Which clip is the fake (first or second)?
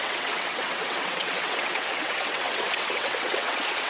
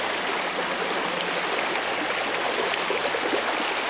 first